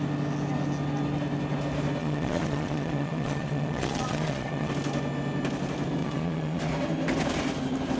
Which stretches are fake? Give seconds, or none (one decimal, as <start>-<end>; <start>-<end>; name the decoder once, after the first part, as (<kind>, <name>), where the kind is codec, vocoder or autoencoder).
2.0-4.7 (vocoder, Vocos); 6.0-6.6